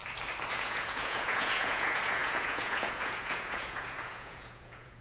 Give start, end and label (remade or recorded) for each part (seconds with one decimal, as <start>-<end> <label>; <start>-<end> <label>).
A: 0.0-0.5 recorded; 0.5-5.0 remade